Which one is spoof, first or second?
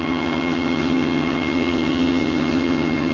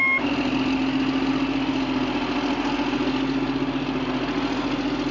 first